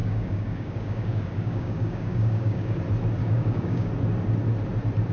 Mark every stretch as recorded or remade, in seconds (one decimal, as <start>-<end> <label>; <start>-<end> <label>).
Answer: 0.0-2.8 remade; 2.8-3.2 recorded; 3.2-3.9 remade; 3.9-5.1 recorded